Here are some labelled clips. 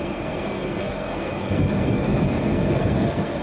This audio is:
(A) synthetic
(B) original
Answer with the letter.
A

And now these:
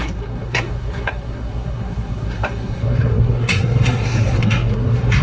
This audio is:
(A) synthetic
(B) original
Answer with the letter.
A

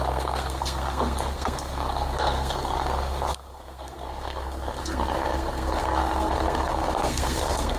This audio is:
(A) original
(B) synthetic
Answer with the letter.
B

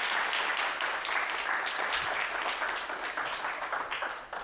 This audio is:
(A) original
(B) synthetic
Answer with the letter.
A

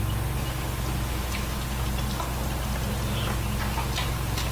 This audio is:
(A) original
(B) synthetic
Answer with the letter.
A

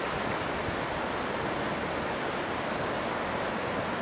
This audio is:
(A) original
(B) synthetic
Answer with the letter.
A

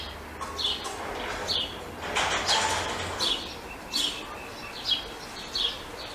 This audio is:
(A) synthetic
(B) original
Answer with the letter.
B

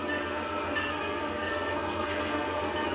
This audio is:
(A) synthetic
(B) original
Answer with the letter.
A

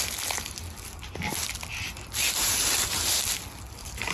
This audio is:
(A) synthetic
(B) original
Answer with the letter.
B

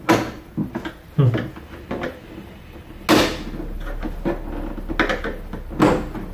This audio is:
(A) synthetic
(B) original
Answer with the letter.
B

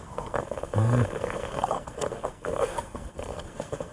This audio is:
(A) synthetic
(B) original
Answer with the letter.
A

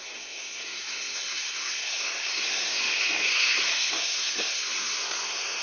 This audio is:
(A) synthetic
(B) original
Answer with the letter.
A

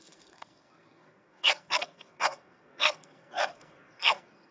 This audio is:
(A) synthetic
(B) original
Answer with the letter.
A